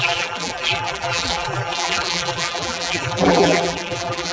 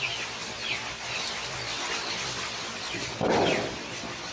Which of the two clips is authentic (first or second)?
second